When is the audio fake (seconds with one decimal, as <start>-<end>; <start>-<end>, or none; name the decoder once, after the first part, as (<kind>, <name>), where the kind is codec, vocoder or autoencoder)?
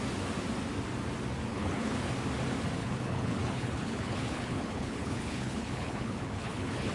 1.5-2.1 (codec, HILCodec); 2.8-6.9